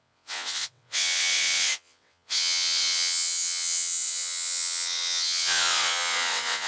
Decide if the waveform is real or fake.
fake